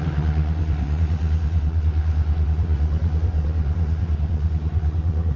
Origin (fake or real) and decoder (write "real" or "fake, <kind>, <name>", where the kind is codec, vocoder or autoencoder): fake, vocoder, WaveNeXt